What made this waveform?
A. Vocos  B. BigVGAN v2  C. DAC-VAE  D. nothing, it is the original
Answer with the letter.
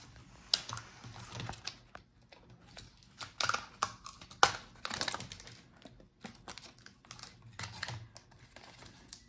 D